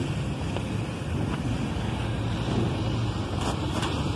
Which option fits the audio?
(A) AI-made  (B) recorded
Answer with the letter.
B